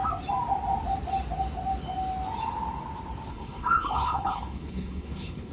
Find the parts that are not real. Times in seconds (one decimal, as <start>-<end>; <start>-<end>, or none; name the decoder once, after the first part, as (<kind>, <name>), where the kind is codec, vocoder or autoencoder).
3.3-5.5 (codec, HILCodec)